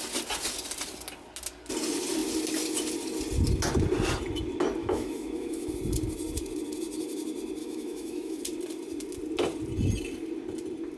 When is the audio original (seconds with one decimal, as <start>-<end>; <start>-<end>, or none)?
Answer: 0.0-4.8; 5.7-7.6; 8.4-11.0